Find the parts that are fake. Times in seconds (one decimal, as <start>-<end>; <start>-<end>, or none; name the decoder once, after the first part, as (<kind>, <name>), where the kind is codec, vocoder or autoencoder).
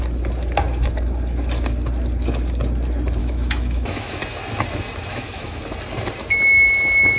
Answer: 3.2-4.2 (autoencoder, DAC-VAE); 5.1-5.6